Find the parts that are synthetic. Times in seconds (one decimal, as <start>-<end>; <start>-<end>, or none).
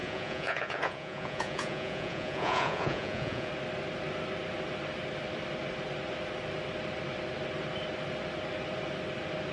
0.0-3.5